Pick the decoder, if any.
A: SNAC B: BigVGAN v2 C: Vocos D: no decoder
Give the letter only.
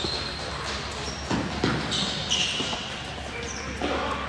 D